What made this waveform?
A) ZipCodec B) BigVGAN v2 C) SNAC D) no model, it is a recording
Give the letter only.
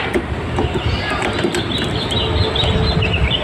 D